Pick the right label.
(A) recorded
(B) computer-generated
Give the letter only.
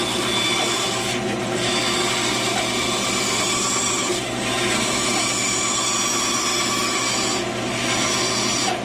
A